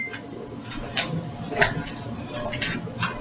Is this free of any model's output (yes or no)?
yes